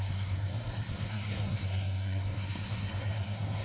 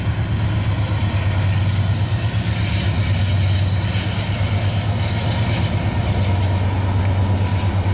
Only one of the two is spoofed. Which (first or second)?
first